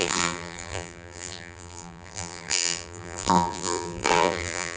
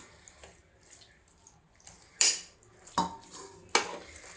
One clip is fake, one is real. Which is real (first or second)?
second